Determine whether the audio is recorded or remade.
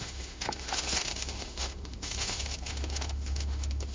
remade